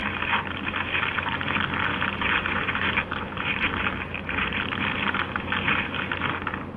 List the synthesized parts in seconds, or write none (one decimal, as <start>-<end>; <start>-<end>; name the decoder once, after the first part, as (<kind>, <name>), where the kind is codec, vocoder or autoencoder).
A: none